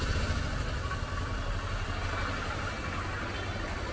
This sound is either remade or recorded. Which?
recorded